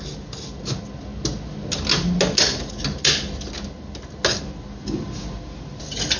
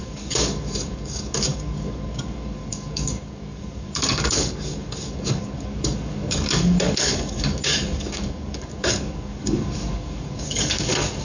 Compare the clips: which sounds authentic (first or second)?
first